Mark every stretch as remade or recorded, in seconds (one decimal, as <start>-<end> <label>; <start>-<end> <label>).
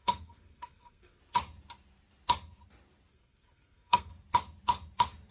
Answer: 0.0-1.2 remade; 1.2-3.1 recorded; 3.1-4.1 remade; 4.1-5.3 recorded